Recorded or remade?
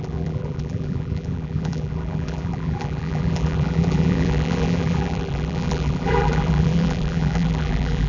remade